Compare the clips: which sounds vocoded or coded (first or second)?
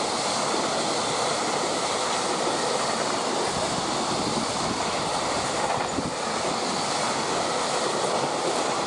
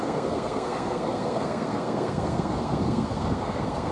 second